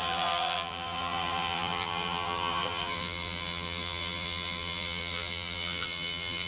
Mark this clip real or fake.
fake